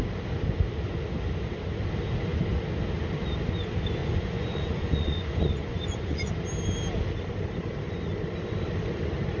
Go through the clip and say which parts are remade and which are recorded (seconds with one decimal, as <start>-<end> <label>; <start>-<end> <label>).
0.0-4.0 recorded; 4.0-6.3 remade; 6.3-9.4 recorded